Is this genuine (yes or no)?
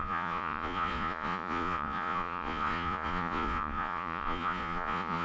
no